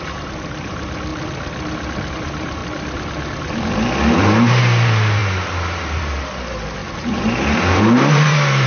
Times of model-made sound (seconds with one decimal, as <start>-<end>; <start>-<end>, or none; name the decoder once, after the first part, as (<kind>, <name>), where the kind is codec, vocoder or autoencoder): 0.0-1.1 (vocoder, BigVGAN v2); 2.1-2.6; 4.2-8.7